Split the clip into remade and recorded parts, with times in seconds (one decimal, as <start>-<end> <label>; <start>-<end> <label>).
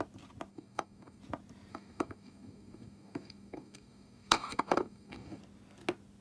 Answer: 0.0-0.5 recorded; 0.5-1.2 remade; 1.2-1.7 recorded; 1.7-5.4 remade; 5.4-6.2 recorded